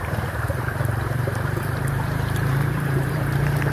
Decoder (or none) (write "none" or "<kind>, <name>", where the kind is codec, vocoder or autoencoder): vocoder, BigVGAN v2